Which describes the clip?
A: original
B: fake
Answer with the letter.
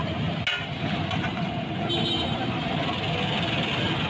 A